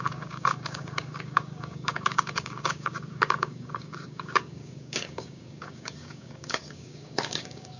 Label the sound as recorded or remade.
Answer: remade